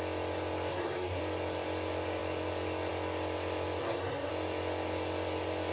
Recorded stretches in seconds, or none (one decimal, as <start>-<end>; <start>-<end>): 0.0-0.7; 1.2-3.8; 4.3-5.7